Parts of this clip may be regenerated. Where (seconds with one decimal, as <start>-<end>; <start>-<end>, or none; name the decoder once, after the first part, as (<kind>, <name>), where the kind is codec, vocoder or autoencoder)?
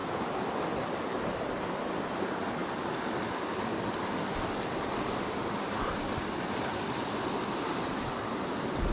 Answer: none